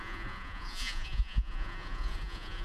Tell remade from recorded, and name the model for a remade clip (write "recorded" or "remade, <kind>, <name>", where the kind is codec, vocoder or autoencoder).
remade, vocoder, Vocos